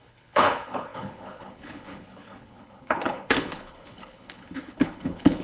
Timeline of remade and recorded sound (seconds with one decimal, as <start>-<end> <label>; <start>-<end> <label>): 0.0-5.4 remade